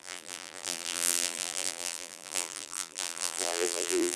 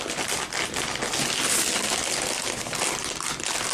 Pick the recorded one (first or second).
second